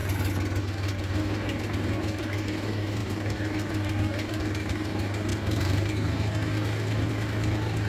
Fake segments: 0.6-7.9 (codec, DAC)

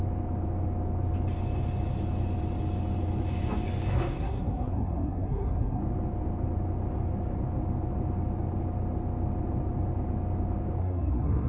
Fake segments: 3.9-5.8 (codec, SNAC); 10.8-11.5

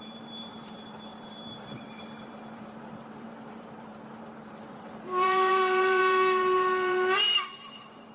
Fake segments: 0.0-8.1 (vocoder, BigVGAN v2)

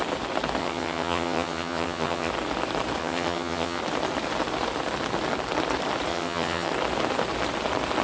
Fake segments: 0.6-2.3 (vocoder, HiFi-GAN); 3.0-3.8; 6.1-6.7

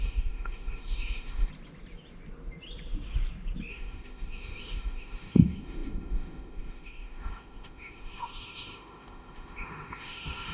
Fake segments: 0.0-1.5 (autoencoder, DAC-VAE); 3.7-10.5

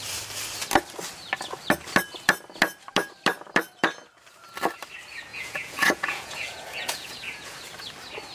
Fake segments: 5.3-7.6 (vocoder, Vocos)